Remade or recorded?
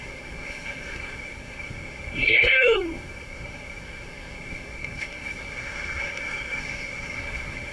remade